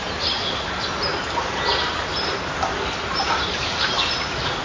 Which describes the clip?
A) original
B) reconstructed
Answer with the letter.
A